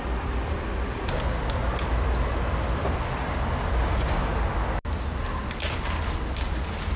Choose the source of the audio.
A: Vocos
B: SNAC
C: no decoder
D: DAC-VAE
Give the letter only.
C